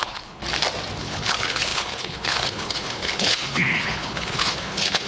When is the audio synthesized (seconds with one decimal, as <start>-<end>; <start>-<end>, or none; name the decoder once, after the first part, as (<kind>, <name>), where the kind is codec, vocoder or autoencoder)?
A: 0.0-0.4 (codec, HILCodec); 1.0-5.1